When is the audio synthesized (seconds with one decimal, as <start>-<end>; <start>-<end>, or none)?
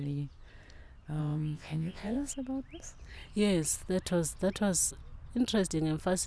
1.2-2.3